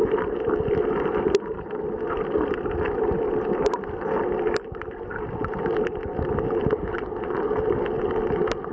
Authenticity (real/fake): real